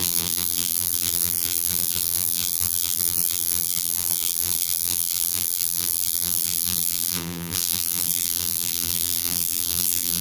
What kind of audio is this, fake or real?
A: fake